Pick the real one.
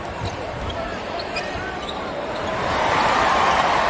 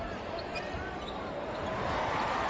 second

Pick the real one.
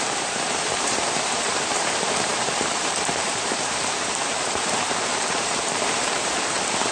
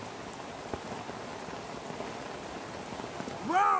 second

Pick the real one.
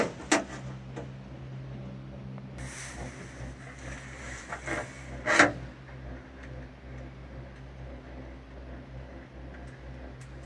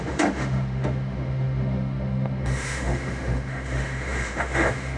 first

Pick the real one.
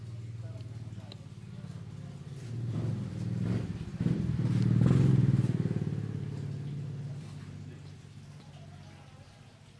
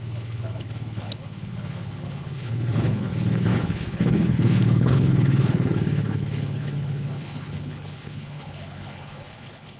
first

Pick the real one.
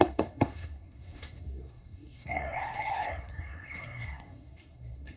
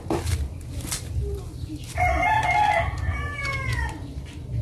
second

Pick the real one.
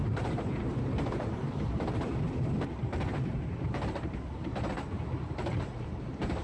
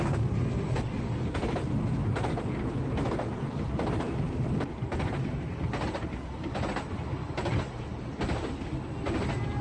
second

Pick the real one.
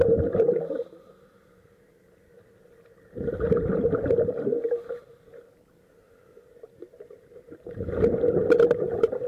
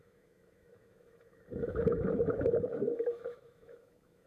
first